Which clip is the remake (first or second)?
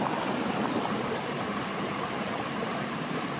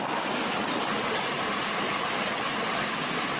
first